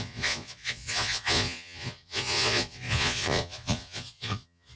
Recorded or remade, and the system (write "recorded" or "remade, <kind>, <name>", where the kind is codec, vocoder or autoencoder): remade, vocoder, Vocos